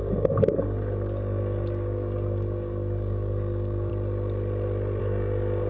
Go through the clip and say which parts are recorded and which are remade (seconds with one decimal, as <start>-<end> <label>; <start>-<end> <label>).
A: 0.0-3.9 remade; 3.9-5.0 recorded; 5.0-5.7 remade